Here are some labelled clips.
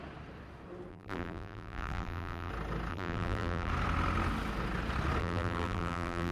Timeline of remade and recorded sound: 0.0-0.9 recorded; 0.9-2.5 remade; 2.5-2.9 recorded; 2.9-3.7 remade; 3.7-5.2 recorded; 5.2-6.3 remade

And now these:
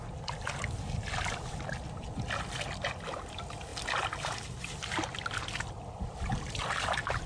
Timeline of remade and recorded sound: 0.0-7.3 recorded

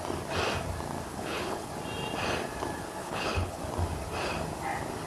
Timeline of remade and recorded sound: 0.0-1.1 recorded; 1.1-1.7 remade; 1.7-3.0 recorded; 3.0-3.6 remade; 3.6-5.1 recorded

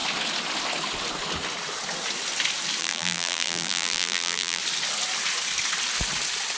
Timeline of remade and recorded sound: 0.0-2.8 recorded; 2.8-4.6 remade; 4.6-6.6 recorded

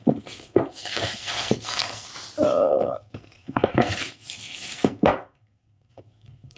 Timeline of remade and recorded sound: 0.0-2.1 remade; 2.1-2.7 recorded; 2.7-6.6 remade

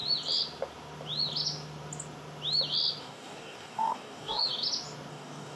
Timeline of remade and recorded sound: 0.0-3.0 recorded; 3.0-4.5 remade; 4.5-5.1 recorded; 5.1-5.6 remade

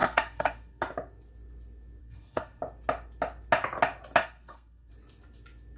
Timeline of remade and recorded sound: 0.0-0.8 remade; 0.8-2.0 recorded; 2.0-2.6 remade; 2.6-4.2 recorded; 4.2-4.9 remade; 4.9-5.8 recorded